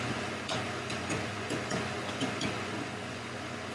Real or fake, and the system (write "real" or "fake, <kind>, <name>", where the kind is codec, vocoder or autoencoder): fake, vocoder, Vocos